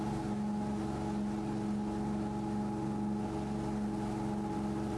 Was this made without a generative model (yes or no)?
yes